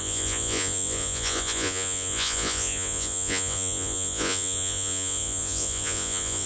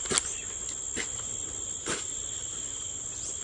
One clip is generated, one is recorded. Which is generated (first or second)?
first